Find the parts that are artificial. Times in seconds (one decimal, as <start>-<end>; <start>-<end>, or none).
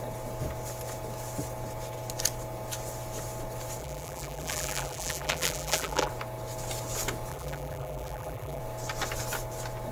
3.8-6.1; 7.3-8.6